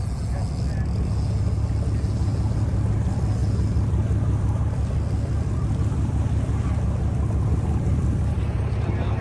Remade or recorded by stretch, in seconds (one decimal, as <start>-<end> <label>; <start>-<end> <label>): 0.0-9.2 recorded